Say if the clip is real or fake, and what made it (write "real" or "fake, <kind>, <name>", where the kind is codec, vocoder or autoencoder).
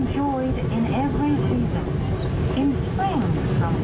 real